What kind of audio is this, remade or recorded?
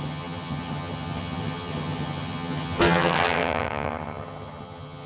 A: remade